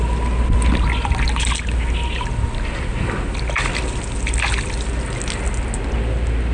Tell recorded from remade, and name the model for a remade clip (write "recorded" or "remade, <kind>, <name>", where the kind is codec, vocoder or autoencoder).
recorded